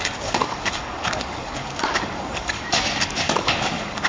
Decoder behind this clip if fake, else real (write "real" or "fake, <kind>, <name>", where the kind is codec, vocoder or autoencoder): fake, codec, DAC